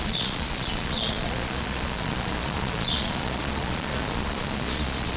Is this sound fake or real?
fake